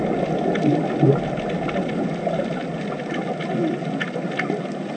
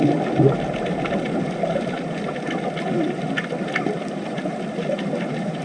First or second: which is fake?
second